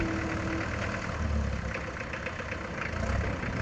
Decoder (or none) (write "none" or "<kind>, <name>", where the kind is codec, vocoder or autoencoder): none